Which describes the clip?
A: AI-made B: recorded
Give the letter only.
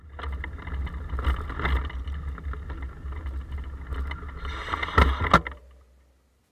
B